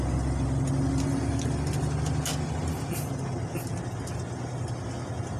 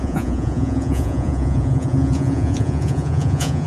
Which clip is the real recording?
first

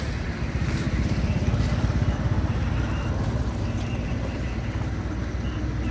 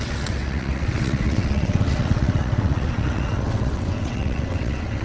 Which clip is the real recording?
first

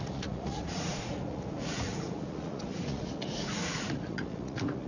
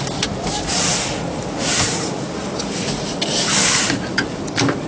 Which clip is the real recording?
second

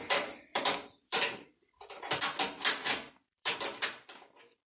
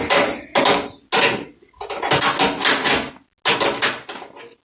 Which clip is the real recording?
second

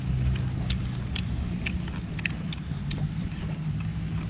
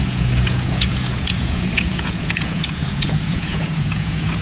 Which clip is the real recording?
first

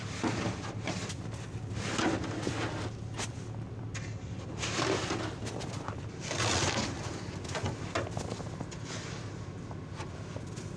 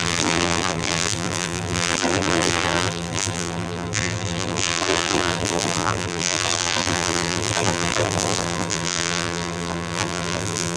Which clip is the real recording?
first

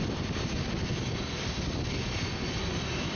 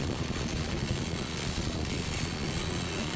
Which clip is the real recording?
first